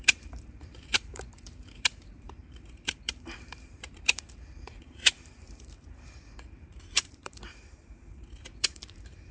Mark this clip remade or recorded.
remade